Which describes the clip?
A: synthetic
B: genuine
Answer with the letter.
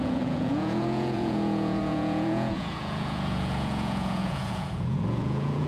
A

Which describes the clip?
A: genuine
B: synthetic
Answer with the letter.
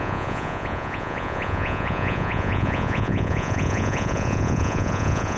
B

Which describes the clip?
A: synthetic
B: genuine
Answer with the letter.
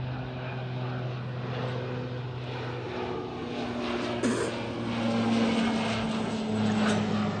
B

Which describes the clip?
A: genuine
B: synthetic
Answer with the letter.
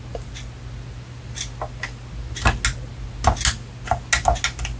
A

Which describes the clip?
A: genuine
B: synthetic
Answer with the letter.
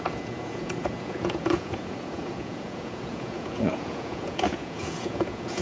B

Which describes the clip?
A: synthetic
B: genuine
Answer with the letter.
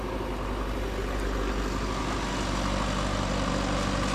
B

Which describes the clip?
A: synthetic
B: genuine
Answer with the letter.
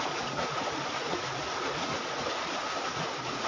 A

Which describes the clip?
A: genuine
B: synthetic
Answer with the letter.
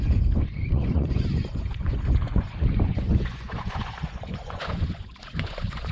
B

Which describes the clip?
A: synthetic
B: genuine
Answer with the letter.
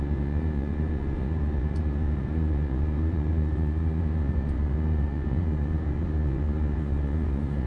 A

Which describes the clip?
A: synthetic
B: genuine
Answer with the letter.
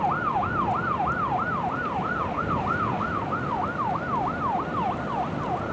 B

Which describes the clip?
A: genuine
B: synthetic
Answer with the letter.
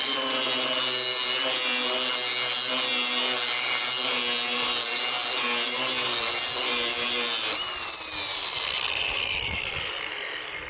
A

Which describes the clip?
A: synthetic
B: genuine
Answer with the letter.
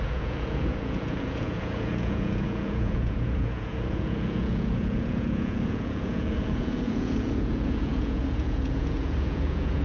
A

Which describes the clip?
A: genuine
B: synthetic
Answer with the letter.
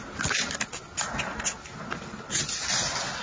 A